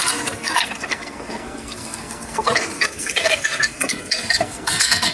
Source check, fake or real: fake